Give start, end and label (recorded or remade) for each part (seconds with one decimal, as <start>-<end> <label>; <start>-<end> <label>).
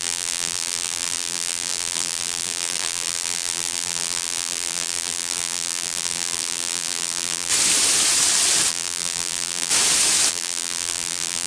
0.0-7.5 remade; 7.5-8.7 recorded; 8.7-9.7 remade; 9.7-10.3 recorded; 10.3-11.5 remade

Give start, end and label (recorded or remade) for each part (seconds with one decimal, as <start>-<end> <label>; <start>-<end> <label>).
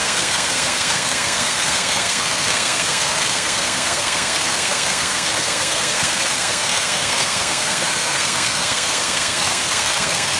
0.0-10.4 remade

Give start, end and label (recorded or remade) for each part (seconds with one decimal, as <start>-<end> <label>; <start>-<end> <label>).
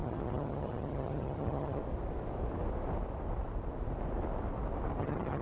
0.0-1.8 remade; 1.8-5.0 recorded; 5.0-5.4 remade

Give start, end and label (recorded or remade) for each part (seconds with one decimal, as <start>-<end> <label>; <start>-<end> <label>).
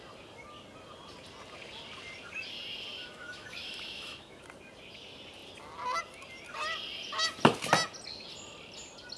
0.0-3.0 recorded; 3.0-4.4 remade; 4.4-9.2 recorded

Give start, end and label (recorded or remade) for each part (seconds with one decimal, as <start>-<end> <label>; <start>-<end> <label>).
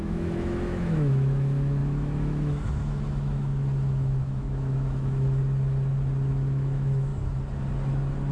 0.0-5.4 remade; 5.4-6.3 recorded; 6.3-7.1 remade; 7.1-8.3 recorded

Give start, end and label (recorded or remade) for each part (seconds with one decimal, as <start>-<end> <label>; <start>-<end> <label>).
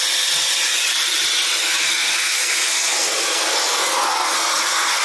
0.0-1.8 recorded; 1.8-5.0 remade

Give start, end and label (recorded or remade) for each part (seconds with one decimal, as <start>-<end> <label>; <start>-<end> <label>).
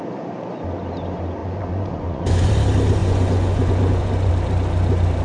0.0-1.4 recorded; 1.4-2.5 remade; 2.5-3.0 recorded; 3.0-4.3 remade; 4.3-5.2 recorded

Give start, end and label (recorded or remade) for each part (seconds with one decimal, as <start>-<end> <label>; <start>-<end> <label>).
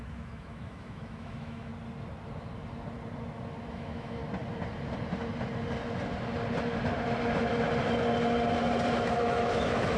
0.0-1.7 remade; 1.7-3.7 recorded; 3.7-4.2 remade; 4.2-9.1 recorded; 9.1-10.0 remade